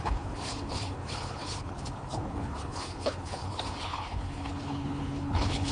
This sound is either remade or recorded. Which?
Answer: remade